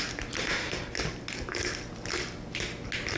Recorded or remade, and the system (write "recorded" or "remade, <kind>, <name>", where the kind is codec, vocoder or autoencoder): recorded